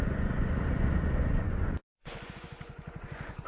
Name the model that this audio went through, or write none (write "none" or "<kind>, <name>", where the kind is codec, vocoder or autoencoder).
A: vocoder, Vocos